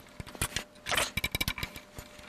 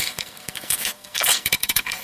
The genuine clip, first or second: first